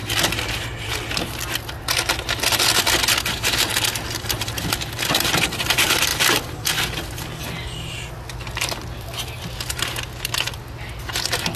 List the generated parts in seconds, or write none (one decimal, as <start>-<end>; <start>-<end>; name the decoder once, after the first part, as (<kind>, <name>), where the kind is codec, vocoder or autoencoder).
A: none